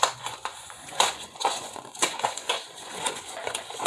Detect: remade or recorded remade